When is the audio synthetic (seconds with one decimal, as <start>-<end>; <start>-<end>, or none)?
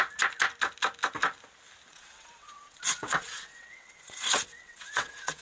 1.9-5.4